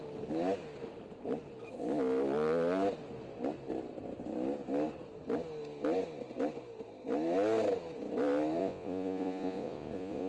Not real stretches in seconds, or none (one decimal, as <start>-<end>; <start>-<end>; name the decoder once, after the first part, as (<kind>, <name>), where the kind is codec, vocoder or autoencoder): 8.6-10.3 (vocoder, Vocos)